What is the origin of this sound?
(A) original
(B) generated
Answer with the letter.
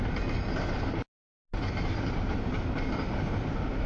A